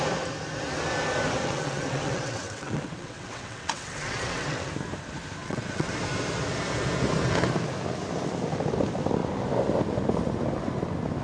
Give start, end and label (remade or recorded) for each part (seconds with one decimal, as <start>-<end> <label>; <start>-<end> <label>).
0.0-1.4 recorded; 1.4-4.7 remade; 4.7-5.4 recorded; 5.4-5.9 remade; 5.9-11.2 recorded